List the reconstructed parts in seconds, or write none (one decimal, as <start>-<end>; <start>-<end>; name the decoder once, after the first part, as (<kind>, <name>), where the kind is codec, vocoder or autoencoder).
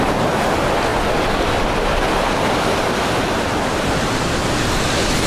none